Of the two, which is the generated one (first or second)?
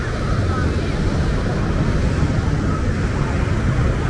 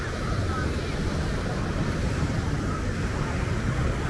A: second